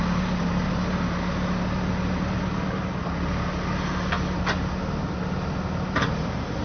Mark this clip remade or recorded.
recorded